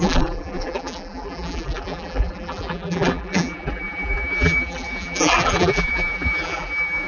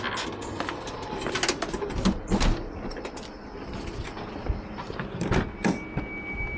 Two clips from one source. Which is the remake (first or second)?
first